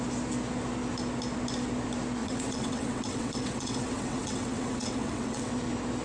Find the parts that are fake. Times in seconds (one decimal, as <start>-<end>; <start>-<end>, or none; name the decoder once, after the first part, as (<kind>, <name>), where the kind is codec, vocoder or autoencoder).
2.2-5.5 (vocoder, WaveNeXt)